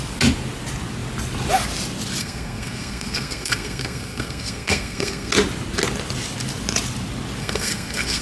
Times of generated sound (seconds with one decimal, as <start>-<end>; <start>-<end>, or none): 2.2-5.3; 7.4-8.2